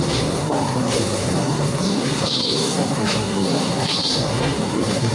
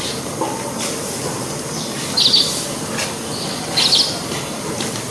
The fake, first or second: first